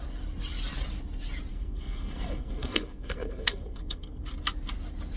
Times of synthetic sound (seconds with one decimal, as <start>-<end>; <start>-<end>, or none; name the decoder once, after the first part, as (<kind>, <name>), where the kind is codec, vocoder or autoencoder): 1.5-4.2 (codec, SNAC)